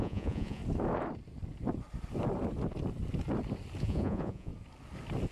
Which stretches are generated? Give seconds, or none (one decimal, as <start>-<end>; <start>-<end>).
0.0-0.6; 3.8-4.5